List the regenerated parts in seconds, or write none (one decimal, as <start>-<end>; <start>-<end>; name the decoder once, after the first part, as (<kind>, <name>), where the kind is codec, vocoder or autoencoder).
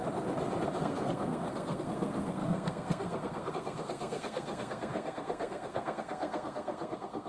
0.8-7.3 (codec, SNAC)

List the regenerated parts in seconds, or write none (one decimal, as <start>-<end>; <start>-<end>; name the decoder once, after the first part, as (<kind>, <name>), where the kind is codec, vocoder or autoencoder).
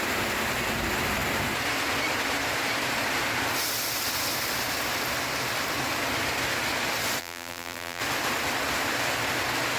7.2-8.0 (vocoder, BigVGAN v2)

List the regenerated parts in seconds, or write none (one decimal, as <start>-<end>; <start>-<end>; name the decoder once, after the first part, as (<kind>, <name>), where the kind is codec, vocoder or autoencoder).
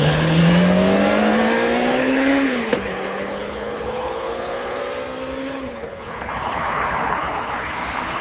0.0-0.4 (codec, HILCodec); 1.9-4.8; 5.4-8.2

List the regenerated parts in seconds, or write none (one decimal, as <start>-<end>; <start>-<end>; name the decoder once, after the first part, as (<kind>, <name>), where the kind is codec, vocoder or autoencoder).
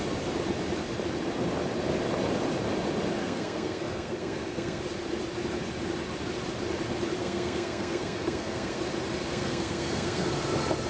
3.2-4.8 (codec, SNAC); 7.2-8.8; 9.3-10.3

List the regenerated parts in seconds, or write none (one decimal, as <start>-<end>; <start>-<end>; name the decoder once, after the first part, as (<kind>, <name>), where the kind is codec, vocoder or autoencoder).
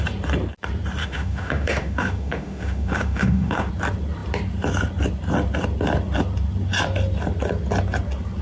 1.0-3.7 (autoencoder, DAC-VAE)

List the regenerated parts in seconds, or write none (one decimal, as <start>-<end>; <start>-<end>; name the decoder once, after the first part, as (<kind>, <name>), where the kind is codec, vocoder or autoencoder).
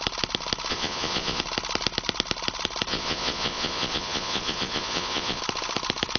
0.7-1.4 (vocoder, Vocos); 2.9-5.4